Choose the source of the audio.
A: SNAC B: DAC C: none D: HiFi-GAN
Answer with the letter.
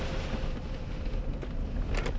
C